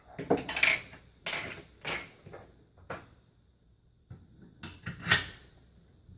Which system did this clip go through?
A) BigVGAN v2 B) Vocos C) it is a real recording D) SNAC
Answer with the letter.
C